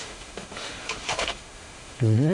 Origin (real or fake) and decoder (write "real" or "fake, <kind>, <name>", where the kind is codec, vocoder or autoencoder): fake, autoencoder, DAC-VAE